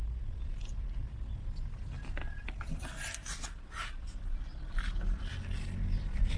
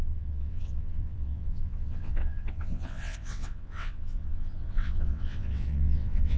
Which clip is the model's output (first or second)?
second